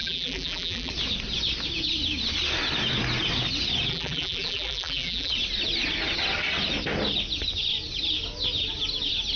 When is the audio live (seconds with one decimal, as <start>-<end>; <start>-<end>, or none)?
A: 0.9-3.9; 5.3-9.4